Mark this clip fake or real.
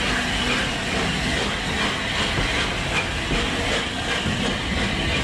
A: real